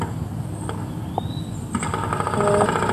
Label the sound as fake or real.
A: real